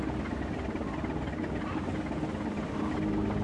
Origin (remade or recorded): recorded